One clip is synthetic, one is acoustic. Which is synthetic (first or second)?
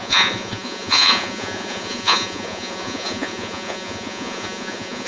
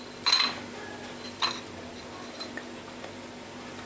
first